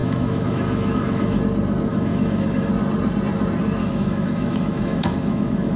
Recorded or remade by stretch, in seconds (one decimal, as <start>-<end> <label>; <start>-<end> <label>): 0.0-1.4 remade; 1.4-1.9 recorded; 1.9-2.7 remade; 2.7-3.8 recorded; 3.8-5.8 remade